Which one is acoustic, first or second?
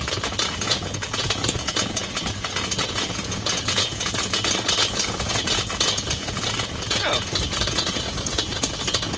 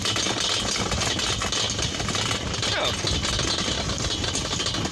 second